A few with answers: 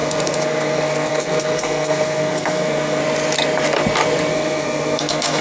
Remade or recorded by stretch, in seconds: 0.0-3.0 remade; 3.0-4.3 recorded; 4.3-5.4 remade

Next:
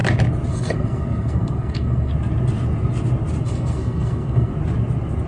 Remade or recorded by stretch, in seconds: 0.0-0.5 recorded; 0.5-2.1 remade; 2.1-3.4 recorded; 3.4-4.5 remade; 4.5-5.3 recorded

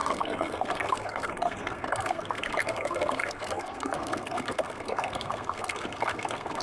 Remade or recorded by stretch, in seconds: 0.0-6.6 remade

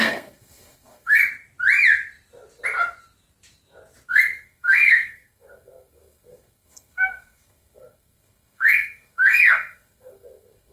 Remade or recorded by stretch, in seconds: 0.0-1.2 remade; 1.2-4.1 recorded; 4.1-10.7 remade

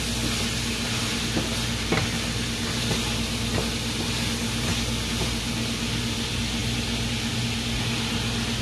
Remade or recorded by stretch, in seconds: 0.0-8.6 recorded

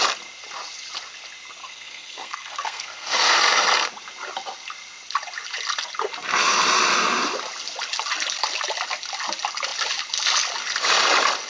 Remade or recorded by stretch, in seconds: 0.0-1.6 recorded; 1.6-3.4 remade; 3.4-11.5 recorded

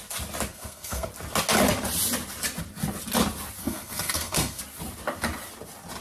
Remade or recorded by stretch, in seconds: 0.0-0.5 recorded; 0.5-1.1 remade; 1.1-3.6 recorded; 3.6-4.6 remade; 4.6-6.0 recorded

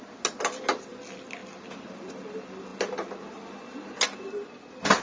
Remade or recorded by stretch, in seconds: 0.0-5.0 recorded